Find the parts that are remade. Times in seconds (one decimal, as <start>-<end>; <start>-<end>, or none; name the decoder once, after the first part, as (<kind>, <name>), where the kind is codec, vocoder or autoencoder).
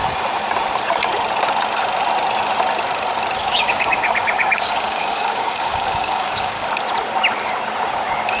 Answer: 3.4-6.7 (codec, DAC)